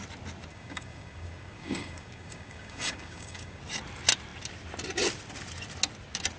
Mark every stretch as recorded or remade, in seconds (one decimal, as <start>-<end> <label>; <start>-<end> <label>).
0.0-0.5 recorded; 0.5-3.6 remade; 3.6-6.4 recorded